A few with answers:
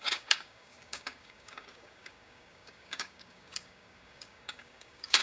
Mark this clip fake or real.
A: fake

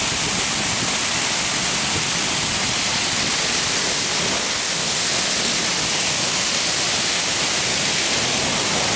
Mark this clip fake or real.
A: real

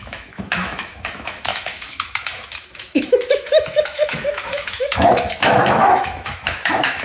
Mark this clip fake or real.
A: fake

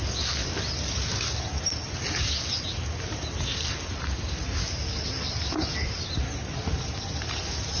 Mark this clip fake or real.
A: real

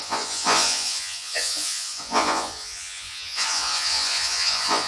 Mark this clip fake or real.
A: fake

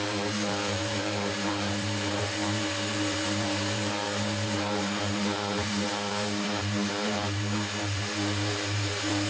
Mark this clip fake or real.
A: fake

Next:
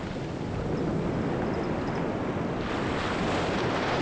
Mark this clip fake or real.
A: real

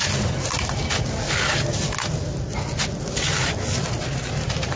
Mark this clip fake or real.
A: real